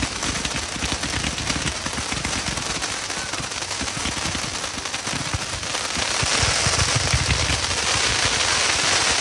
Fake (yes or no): no